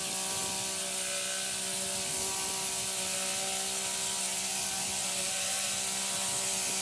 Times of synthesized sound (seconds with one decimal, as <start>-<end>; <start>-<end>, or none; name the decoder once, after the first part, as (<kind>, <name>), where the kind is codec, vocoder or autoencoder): 5.0-5.7 (vocoder, BigVGAN v2)